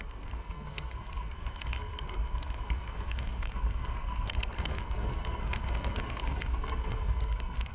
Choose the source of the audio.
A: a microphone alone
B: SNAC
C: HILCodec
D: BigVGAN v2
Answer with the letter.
B